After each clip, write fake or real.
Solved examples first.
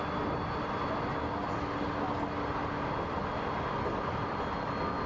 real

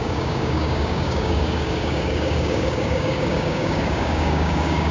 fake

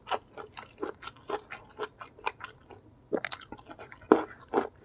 real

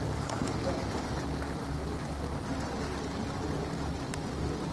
real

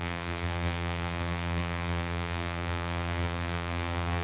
fake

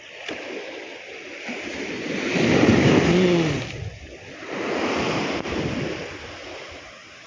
fake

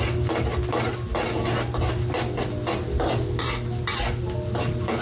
real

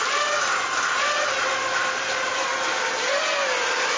real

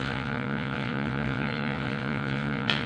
fake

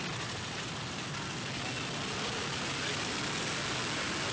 real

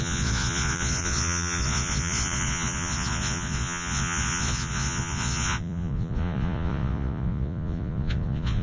fake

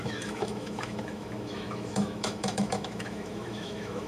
fake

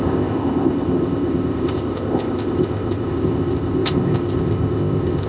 fake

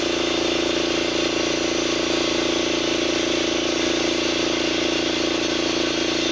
real